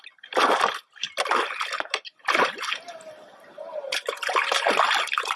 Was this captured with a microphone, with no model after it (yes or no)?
yes